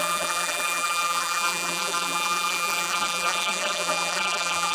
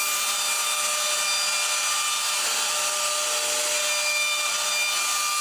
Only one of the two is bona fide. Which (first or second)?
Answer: second